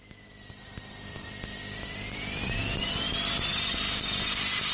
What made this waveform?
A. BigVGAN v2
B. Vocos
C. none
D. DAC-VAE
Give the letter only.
C